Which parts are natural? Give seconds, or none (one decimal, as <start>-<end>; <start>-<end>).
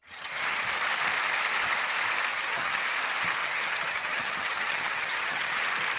0.6-2.3; 2.8-3.4; 5.6-6.0